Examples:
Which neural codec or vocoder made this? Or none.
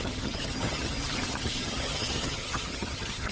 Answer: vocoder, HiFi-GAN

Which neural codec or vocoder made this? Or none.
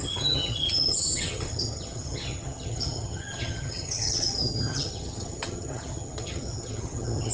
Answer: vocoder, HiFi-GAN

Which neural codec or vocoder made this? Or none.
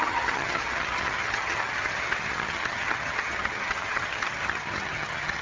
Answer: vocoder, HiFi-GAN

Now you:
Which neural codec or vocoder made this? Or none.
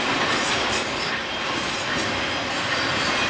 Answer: none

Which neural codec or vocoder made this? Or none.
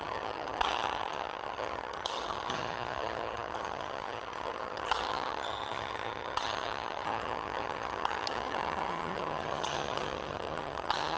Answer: vocoder, HiFi-GAN